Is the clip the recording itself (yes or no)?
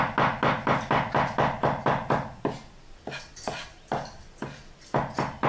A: yes